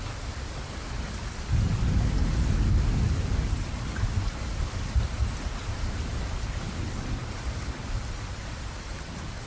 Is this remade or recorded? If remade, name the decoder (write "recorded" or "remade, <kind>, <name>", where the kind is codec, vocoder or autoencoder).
recorded